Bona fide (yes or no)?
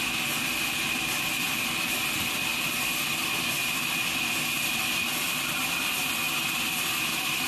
yes